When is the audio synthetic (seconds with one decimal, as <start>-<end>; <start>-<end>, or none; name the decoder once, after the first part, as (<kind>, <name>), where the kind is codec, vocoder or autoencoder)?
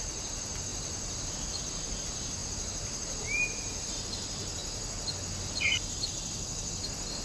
none